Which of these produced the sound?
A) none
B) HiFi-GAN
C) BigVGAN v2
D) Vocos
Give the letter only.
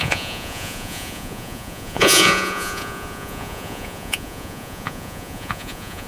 D